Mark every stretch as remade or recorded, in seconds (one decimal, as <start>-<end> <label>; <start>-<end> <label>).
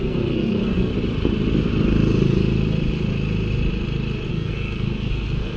0.0-0.9 remade; 0.9-4.3 recorded; 4.3-5.6 remade